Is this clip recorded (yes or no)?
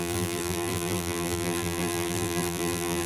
no